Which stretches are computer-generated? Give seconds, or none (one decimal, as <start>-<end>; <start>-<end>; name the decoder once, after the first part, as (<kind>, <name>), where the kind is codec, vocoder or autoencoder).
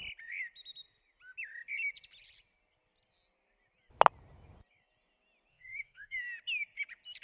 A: 5.5-6.2 (autoencoder, DAC-VAE)